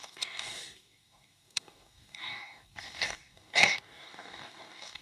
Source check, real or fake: fake